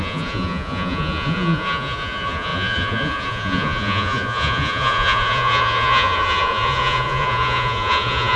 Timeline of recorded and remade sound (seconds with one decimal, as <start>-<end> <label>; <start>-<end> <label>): 0.0-8.4 remade